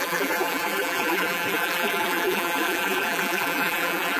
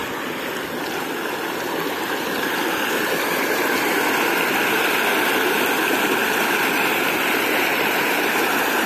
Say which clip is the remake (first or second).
first